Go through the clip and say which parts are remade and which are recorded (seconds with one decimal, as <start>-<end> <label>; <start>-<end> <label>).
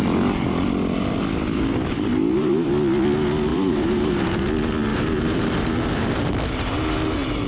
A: 0.0-2.1 recorded; 2.1-2.7 remade; 2.7-3.5 recorded; 3.5-4.5 remade; 4.5-4.9 recorded; 4.9-5.7 remade; 5.7-7.5 recorded